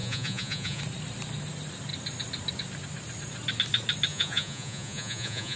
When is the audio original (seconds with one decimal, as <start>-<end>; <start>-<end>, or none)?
0.8-4.1